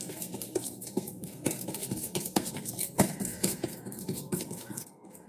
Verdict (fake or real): fake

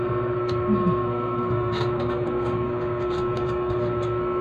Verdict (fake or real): fake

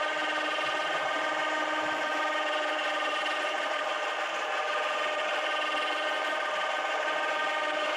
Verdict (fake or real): real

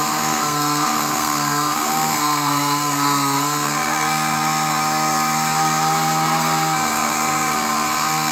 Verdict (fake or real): fake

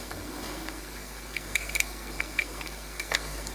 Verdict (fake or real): fake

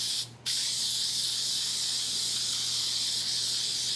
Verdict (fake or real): real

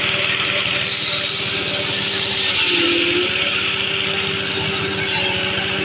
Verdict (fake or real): real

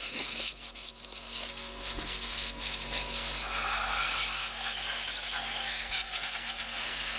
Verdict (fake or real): fake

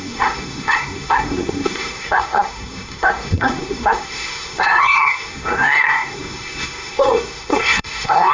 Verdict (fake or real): fake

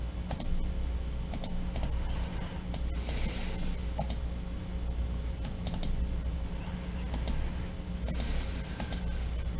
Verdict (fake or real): real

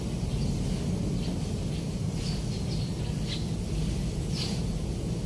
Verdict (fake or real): real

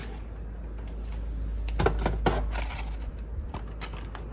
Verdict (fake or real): real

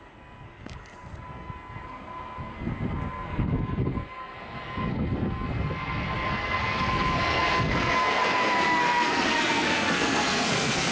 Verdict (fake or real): fake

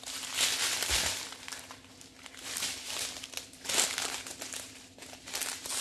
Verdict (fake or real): real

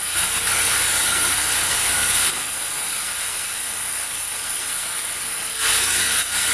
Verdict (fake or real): fake